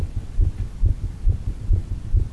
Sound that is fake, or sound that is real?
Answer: real